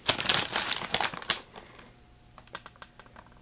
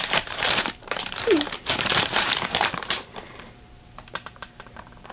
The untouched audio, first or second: first